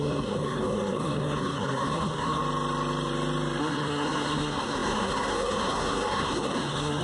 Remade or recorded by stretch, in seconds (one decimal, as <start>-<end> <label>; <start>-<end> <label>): 0.0-2.4 remade; 2.4-3.6 recorded; 3.6-7.0 remade